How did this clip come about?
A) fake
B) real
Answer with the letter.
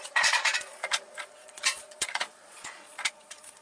A